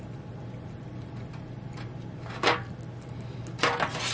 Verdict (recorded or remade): recorded